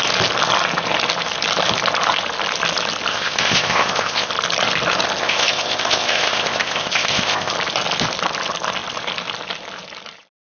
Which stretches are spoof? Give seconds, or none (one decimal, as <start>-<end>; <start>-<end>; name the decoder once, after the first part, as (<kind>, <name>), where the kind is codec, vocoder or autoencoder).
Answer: 3.1-4.3 (codec, ZipCodec); 5.2-7.5